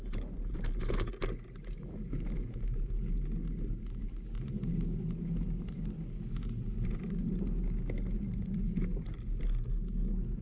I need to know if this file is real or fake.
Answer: real